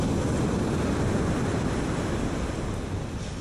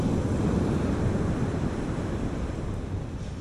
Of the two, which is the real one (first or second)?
first